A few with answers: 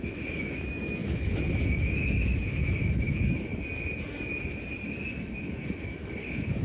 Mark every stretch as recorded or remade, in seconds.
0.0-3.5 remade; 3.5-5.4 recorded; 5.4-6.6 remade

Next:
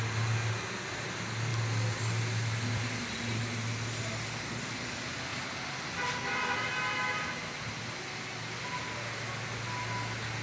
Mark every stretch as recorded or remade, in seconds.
0.0-10.4 recorded

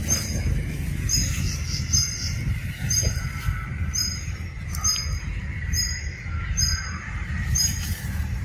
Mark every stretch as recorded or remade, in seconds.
0.0-8.4 recorded

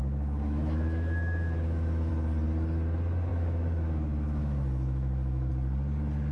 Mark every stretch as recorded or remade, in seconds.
0.0-2.1 remade; 2.1-3.3 recorded; 3.3-5.5 remade; 5.5-6.3 recorded

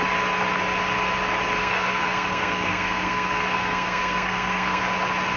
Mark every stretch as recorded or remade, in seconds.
0.0-1.6 recorded; 1.6-4.8 remade; 4.8-5.4 recorded

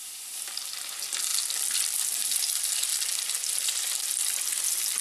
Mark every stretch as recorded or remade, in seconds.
0.0-2.9 remade; 2.9-3.7 recorded; 3.7-5.0 remade

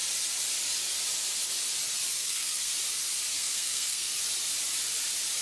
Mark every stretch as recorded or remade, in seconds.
0.0-2.2 recorded; 2.2-2.7 remade; 2.7-3.3 recorded; 3.3-4.1 remade; 4.1-5.4 recorded